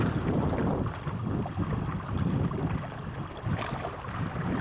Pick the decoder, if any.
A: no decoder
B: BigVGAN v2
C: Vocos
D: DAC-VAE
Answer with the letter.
A